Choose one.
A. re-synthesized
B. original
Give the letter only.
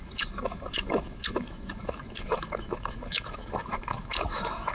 A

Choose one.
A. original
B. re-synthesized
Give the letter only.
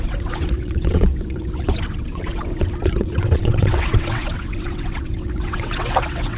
B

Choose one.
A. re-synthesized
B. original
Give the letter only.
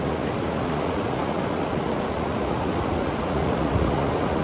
A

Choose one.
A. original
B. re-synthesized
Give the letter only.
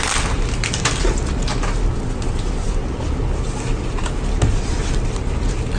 A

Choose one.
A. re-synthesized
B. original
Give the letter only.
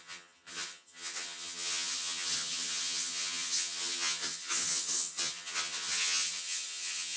A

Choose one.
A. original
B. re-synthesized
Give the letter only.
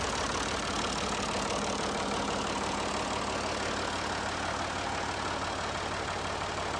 A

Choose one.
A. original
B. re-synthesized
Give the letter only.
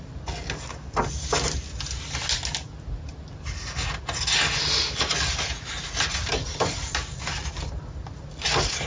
A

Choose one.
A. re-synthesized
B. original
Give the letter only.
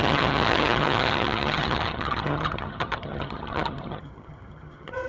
A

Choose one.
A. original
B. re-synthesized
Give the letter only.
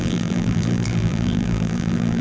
B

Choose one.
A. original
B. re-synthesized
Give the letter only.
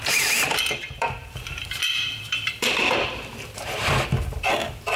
B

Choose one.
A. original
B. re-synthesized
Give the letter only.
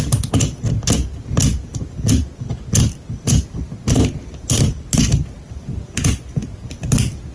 A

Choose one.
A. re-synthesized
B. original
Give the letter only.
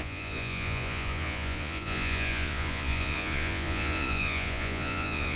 A